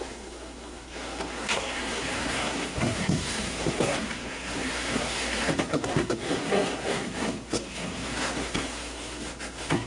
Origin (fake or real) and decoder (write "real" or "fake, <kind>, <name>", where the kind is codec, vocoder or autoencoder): fake, codec, SNAC